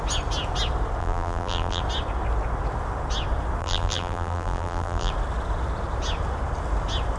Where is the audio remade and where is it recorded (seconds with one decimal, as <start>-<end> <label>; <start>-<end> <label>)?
0.0-1.0 recorded; 1.0-1.8 remade; 1.8-3.6 recorded; 3.6-5.1 remade; 5.1-7.2 recorded